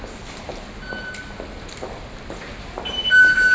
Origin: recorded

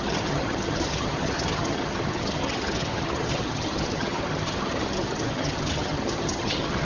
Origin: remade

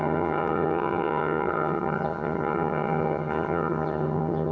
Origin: remade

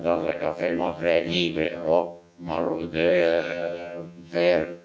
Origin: remade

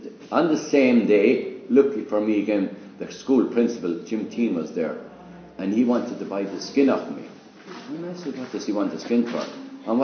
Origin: recorded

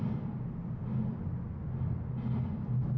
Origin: recorded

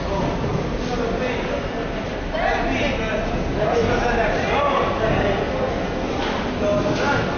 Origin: recorded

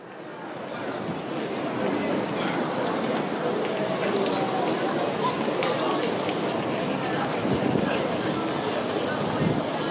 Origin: recorded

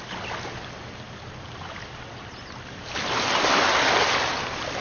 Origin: recorded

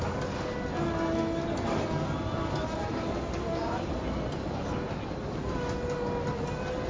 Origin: recorded